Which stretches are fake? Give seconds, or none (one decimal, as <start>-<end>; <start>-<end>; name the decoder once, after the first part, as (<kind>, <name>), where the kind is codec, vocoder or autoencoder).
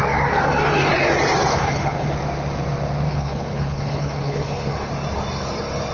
1.5-2.1 (codec, HILCodec); 3.1-4.9